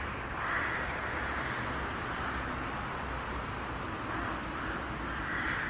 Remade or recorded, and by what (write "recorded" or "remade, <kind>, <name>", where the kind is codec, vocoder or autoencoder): remade, vocoder, BigVGAN v2